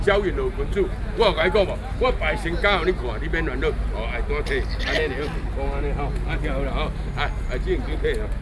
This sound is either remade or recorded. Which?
recorded